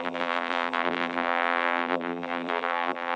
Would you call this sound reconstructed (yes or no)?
yes